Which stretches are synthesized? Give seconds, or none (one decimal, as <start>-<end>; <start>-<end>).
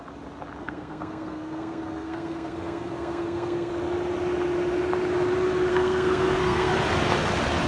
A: 0.6-3.7; 5.7-6.7